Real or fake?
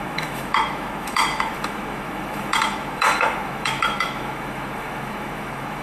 fake